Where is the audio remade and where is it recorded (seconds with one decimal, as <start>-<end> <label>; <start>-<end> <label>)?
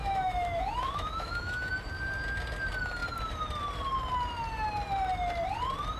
0.0-1.7 remade; 1.7-6.0 recorded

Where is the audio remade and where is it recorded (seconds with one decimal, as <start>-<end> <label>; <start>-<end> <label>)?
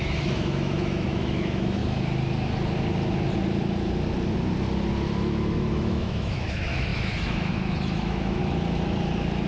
0.0-1.8 remade; 1.8-5.2 recorded; 5.2-8.4 remade; 8.4-9.5 recorded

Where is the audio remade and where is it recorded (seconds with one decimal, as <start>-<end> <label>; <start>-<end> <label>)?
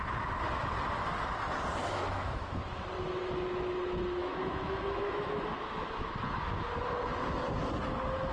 0.0-1.8 recorded; 1.8-2.8 remade; 2.8-4.2 recorded; 4.2-6.7 remade; 6.7-8.3 recorded